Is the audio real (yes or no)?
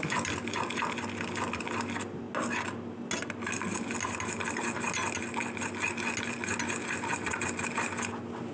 yes